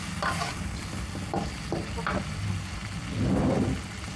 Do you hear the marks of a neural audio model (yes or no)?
no